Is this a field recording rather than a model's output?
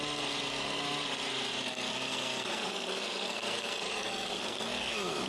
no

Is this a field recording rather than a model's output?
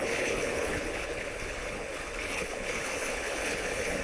no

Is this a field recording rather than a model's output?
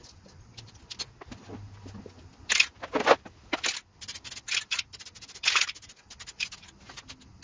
yes